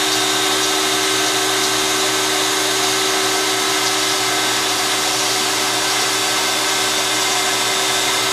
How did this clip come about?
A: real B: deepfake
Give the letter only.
A